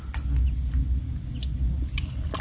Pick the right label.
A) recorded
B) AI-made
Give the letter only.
A